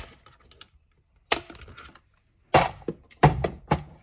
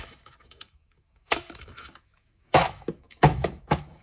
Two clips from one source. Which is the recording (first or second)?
first